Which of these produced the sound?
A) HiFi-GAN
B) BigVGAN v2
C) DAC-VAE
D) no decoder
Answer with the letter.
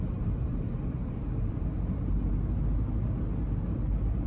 D